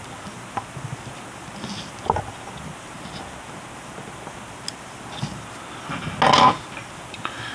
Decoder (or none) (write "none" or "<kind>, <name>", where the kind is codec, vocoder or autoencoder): none